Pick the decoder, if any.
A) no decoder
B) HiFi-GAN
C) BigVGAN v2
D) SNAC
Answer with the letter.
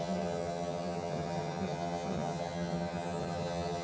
B